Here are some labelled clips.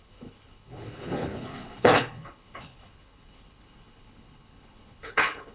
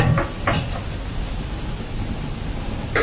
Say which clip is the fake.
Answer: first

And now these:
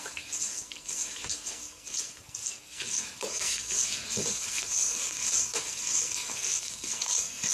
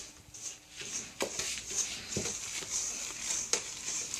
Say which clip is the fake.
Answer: first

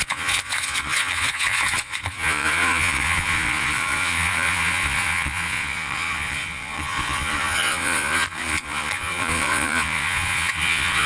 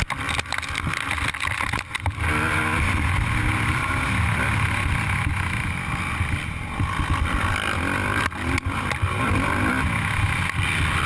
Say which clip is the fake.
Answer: first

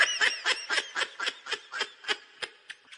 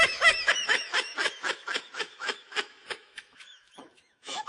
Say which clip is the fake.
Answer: second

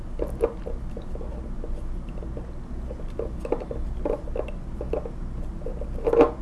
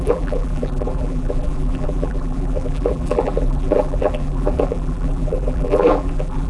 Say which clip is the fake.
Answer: second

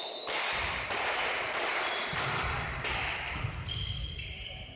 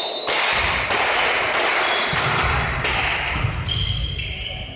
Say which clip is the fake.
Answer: first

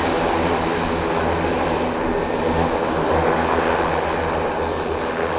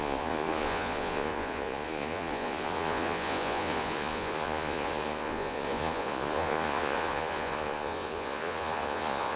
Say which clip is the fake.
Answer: second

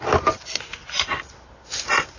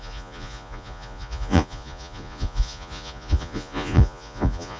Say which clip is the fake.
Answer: second